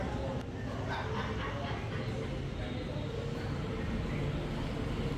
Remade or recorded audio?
recorded